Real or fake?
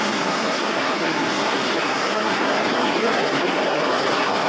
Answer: fake